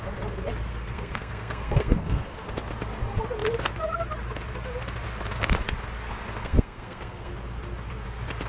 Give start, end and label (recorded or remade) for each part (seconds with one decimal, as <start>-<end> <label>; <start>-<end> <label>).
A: 0.0-0.7 recorded; 0.7-2.5 remade; 2.5-6.4 recorded; 6.4-7.3 remade; 7.3-8.5 recorded